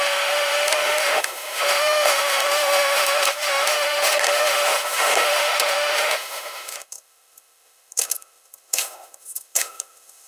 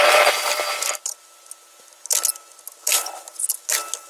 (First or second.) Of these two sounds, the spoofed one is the first